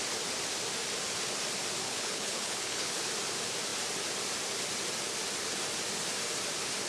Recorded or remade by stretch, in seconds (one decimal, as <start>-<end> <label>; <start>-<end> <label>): 0.0-1.8 recorded; 1.8-3.1 remade; 3.1-6.9 recorded